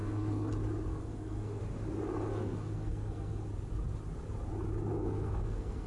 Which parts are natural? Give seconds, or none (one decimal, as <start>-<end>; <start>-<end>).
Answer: 0.5-0.9; 1.6-2.3; 3.5-4.9